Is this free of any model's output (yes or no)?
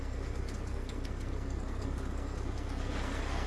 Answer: no